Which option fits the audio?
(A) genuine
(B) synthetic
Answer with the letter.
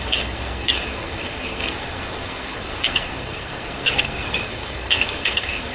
B